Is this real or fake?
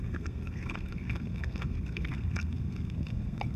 fake